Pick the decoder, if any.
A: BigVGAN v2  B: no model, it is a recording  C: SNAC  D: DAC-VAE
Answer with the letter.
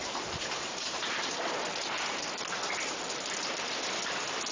A